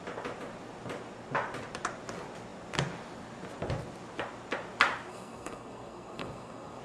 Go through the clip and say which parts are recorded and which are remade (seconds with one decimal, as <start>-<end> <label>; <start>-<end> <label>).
0.0-5.1 recorded; 5.1-6.8 remade